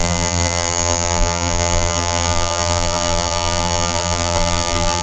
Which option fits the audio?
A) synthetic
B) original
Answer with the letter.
A